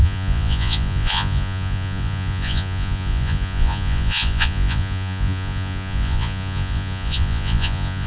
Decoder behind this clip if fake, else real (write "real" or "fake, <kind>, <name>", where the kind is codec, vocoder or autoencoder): fake, vocoder, Vocos